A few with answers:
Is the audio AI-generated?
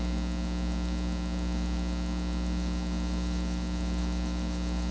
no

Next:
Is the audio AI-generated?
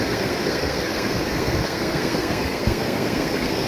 yes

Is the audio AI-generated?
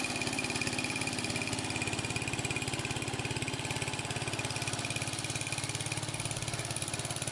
no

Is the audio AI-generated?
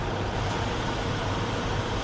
no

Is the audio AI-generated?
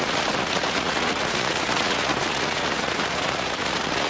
yes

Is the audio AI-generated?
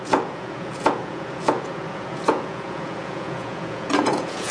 yes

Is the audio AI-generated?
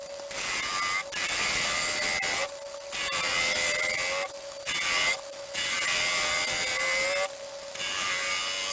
no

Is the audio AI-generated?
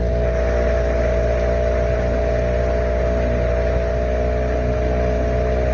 no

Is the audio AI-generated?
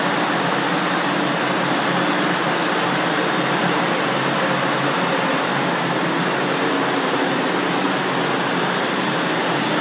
no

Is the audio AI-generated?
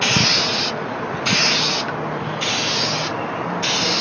no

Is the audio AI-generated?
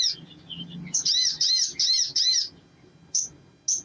no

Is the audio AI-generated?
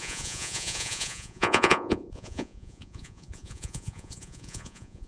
yes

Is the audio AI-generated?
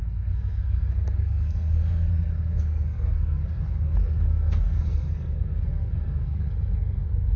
yes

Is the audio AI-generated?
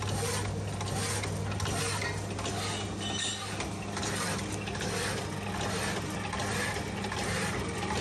no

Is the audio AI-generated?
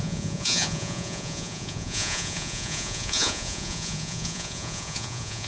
yes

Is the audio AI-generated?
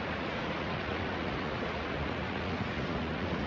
yes